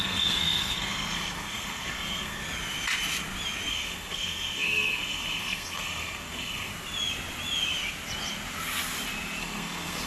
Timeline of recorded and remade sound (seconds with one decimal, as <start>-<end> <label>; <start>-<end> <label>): 0.0-2.4 remade; 2.4-3.7 recorded; 3.7-6.7 remade; 6.7-9.4 recorded; 9.4-10.1 remade